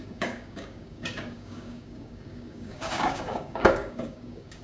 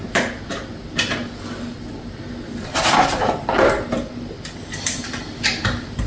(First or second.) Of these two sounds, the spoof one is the first